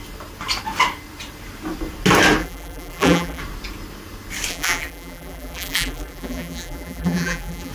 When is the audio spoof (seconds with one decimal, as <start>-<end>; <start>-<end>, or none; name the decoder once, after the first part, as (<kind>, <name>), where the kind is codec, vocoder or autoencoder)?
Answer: 2.4-3.4 (vocoder, BigVGAN v2); 4.5-7.7